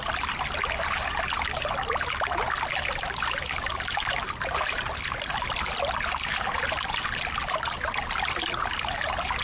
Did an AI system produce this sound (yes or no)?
no